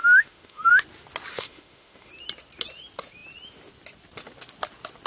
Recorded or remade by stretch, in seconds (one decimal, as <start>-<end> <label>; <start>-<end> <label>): 0.0-0.7 remade; 0.7-1.3 recorded; 1.3-2.1 remade; 2.1-5.1 recorded